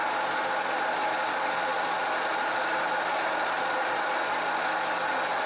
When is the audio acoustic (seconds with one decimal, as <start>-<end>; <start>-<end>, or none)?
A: 0.0-5.5